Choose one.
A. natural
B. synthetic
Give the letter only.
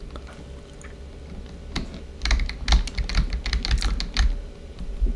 A